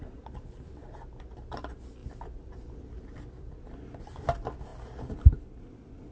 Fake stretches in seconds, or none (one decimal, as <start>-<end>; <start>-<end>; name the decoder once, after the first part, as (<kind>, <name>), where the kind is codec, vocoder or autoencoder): none